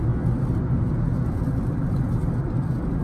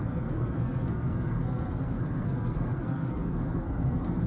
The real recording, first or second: first